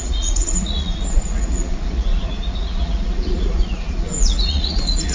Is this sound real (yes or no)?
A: no